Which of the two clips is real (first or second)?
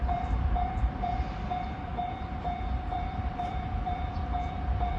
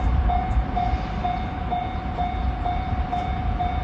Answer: second